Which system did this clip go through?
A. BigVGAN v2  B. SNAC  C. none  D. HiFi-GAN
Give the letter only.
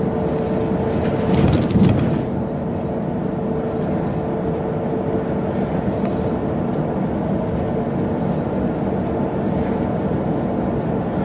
C